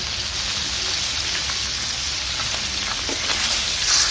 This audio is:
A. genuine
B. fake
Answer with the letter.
A